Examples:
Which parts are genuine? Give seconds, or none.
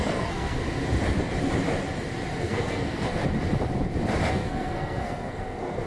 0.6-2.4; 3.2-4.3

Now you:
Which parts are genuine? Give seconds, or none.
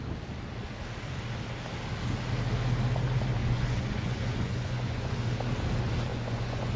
0.0-3.4; 5.1-6.1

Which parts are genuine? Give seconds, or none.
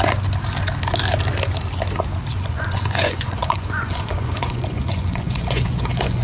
0.0-2.3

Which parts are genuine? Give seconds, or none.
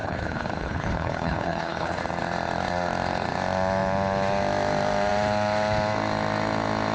2.0-6.9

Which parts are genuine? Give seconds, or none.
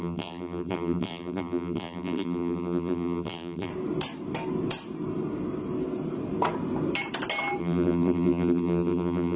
3.7-7.6